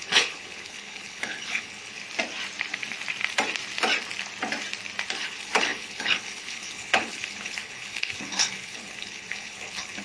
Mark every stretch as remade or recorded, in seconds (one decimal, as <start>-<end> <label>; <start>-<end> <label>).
0.0-2.0 remade; 2.0-5.1 recorded; 5.1-10.0 remade